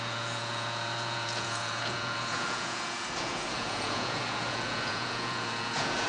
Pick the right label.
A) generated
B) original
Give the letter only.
A